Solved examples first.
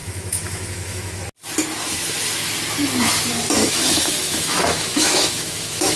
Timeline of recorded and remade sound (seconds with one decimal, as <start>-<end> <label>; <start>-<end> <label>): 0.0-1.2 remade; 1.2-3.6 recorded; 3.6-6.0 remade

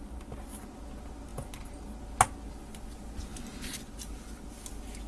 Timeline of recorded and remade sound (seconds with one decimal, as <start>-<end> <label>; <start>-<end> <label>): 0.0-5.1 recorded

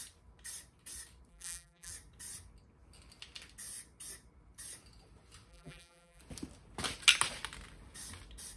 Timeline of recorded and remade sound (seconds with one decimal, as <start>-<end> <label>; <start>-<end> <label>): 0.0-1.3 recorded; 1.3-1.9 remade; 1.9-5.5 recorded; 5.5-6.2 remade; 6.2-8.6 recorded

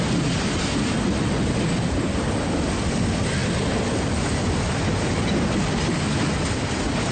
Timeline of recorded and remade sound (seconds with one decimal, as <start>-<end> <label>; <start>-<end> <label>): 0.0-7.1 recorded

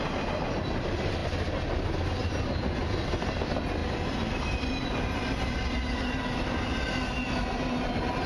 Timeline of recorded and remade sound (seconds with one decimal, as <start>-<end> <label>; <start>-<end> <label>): 0.0-8.3 recorded